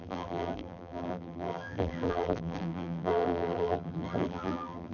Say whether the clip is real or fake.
fake